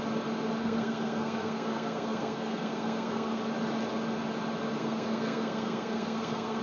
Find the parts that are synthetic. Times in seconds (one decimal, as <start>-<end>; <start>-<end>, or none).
0.6-3.4; 4.7-6.6

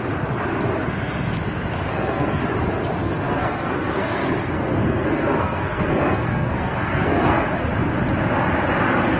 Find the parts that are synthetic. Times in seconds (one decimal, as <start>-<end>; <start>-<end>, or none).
1.9-2.4; 3.0-7.5

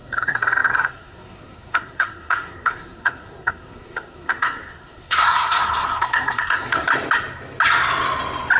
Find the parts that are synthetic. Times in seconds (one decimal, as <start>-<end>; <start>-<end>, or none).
0.0-6.9

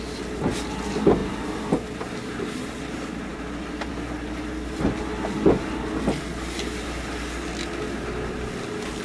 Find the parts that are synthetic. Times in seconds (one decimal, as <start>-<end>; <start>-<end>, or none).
none

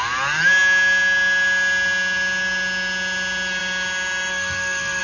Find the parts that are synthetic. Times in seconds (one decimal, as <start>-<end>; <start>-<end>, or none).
4.3-5.0

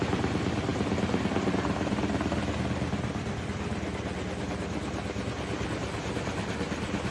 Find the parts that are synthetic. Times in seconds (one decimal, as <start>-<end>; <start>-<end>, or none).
none

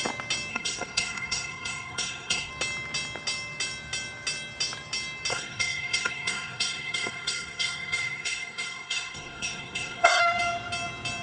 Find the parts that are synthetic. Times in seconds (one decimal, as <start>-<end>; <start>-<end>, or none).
0.5-2.5; 5.3-10.2